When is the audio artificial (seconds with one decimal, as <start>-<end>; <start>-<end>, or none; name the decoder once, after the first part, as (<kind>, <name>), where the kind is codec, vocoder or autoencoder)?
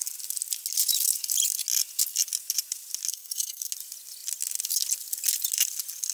3.1-3.7 (codec, SNAC)